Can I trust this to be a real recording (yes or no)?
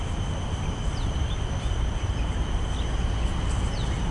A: yes